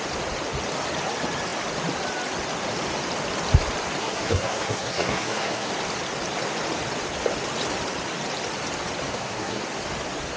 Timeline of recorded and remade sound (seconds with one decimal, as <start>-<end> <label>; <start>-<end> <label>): 0.0-4.0 recorded; 4.0-5.7 remade; 5.7-9.1 recorded; 9.1-9.6 remade; 9.6-10.4 recorded